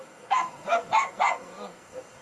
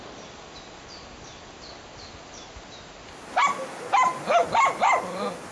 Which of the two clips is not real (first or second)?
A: first